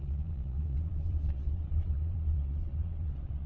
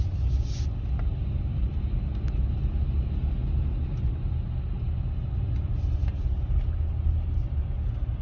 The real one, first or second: second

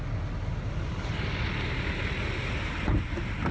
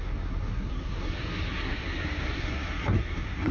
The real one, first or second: first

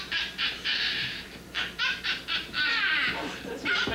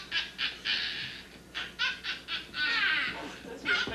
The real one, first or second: second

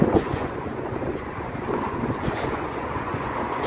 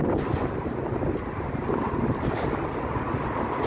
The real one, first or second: second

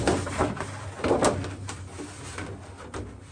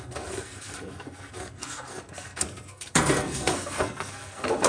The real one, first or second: first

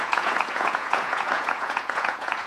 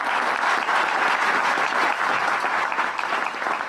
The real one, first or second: second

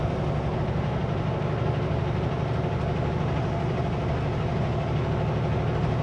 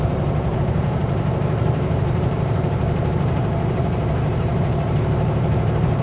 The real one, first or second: first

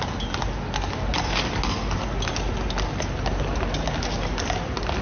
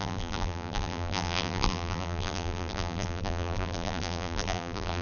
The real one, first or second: first